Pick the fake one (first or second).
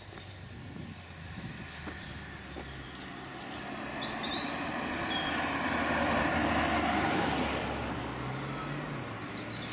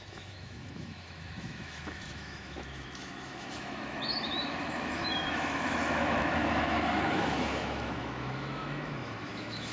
second